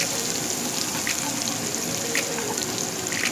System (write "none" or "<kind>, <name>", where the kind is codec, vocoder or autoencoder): none